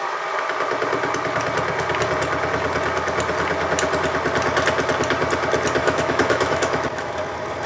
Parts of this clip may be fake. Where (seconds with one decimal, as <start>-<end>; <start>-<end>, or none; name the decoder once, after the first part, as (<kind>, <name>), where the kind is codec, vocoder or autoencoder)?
5.8-7.1 (autoencoder, DAC-VAE)